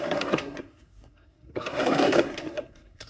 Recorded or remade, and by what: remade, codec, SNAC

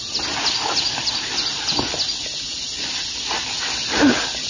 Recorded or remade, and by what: recorded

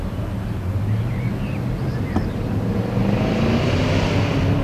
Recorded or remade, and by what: recorded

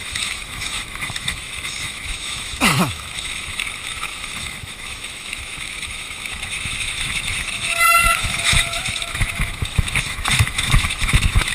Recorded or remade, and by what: remade, autoencoder, DAC-VAE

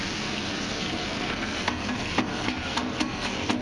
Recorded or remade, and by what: remade, codec, SNAC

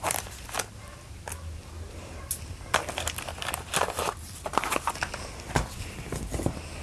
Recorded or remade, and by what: recorded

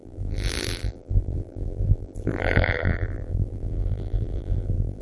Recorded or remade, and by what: remade, vocoder, BigVGAN v2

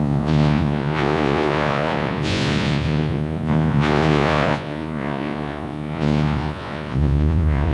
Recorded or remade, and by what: remade, vocoder, Vocos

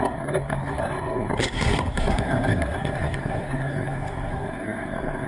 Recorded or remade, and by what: remade, codec, SNAC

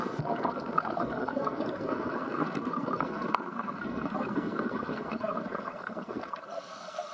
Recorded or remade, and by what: remade, codec, SNAC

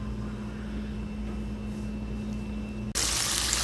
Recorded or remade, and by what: recorded